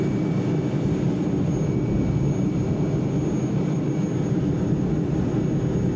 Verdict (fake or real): real